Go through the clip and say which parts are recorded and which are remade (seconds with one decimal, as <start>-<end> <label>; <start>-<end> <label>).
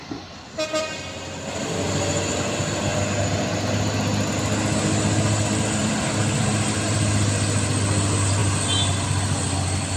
0.0-5.8 recorded; 5.8-6.5 remade; 6.5-10.0 recorded